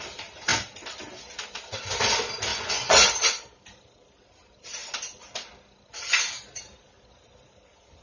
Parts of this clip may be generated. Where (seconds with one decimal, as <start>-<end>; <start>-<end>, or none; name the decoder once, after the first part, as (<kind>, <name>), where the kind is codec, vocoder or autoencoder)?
2.5-3.1 (vocoder, Vocos)